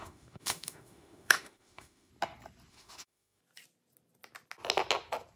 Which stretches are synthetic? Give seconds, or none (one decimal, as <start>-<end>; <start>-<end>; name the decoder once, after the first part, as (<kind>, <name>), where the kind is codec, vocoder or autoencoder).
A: 0.0-2.1 (autoencoder, DAC-VAE); 2.7-3.4